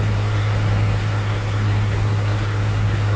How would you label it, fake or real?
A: fake